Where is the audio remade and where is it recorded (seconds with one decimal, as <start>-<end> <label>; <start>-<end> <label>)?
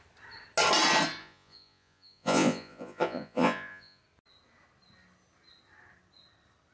0.0-1.2 recorded; 1.2-4.0 remade; 4.0-6.7 recorded